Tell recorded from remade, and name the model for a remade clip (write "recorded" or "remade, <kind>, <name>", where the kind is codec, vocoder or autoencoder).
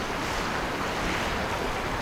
remade, vocoder, BigVGAN v2